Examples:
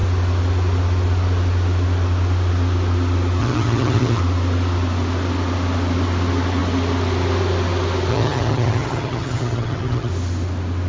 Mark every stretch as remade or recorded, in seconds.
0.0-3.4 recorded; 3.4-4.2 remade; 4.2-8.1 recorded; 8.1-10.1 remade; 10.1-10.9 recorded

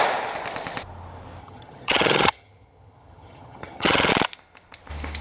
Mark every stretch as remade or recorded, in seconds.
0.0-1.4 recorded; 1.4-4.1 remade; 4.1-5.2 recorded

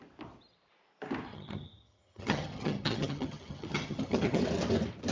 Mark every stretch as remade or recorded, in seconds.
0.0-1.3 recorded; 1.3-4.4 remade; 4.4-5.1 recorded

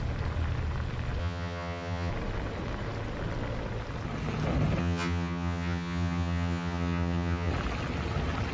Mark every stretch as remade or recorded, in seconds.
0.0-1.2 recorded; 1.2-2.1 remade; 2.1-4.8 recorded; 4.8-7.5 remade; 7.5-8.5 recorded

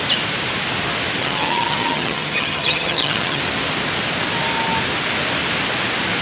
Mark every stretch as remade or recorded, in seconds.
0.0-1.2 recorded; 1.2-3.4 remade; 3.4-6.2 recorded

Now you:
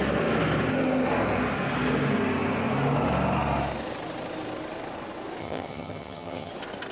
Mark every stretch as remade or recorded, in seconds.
0.0-5.4 recorded; 5.4-6.5 remade; 6.5-6.9 recorded